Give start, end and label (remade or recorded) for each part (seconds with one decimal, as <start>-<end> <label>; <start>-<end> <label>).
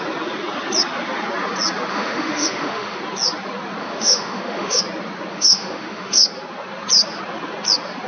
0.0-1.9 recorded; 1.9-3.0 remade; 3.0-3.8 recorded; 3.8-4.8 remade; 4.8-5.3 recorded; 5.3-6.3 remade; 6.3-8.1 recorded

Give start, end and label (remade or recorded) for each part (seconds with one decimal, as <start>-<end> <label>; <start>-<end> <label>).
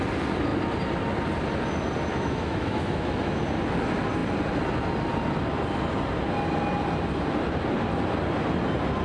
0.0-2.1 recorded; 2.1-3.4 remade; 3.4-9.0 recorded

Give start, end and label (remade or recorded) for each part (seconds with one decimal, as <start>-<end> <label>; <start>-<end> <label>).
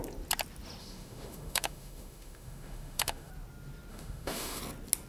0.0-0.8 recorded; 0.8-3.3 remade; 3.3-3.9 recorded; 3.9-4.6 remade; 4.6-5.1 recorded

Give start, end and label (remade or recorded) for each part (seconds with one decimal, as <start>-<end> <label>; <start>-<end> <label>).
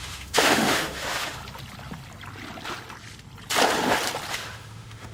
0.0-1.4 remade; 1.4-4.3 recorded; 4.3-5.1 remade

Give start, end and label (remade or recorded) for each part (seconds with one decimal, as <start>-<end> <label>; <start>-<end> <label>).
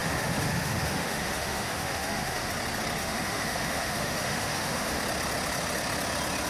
0.0-2.5 remade; 2.5-3.0 recorded; 3.0-5.0 remade; 5.0-6.5 recorded